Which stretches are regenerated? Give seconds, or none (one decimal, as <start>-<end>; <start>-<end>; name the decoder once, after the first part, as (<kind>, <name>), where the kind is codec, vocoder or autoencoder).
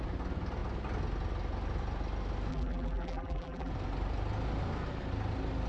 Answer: 2.5-3.7 (vocoder, BigVGAN v2)